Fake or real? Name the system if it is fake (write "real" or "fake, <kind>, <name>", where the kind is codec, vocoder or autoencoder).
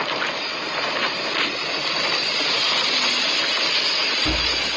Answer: real